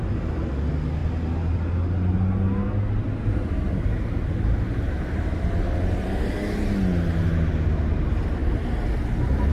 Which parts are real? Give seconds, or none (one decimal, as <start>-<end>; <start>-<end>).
0.0-9.5